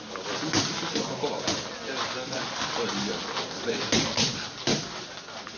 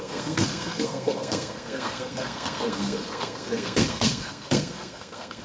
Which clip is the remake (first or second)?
second